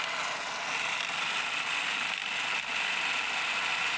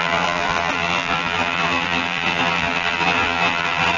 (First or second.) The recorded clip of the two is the first